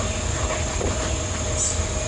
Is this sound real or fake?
real